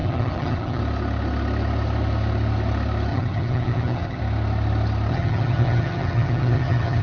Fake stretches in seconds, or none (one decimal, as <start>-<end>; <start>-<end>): 0.0-0.8; 3.1-4.2; 5.1-7.0

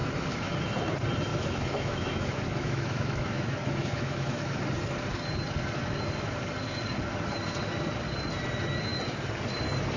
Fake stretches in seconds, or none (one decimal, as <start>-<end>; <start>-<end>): 0.0-0.5; 1.3-4.6

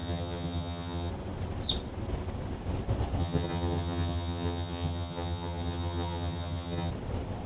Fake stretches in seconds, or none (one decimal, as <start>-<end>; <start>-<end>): 0.0-1.1; 3.2-6.9

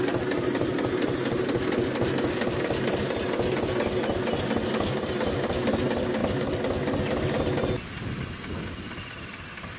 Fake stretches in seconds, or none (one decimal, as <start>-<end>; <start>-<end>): none

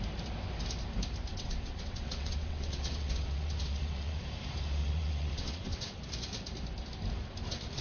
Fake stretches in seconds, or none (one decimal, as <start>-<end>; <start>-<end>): 1.3-4.2; 4.8-6.0

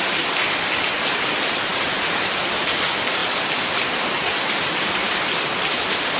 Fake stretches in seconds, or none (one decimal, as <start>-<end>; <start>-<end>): none

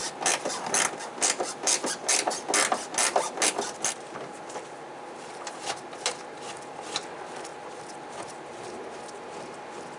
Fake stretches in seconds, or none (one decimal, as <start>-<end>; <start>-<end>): none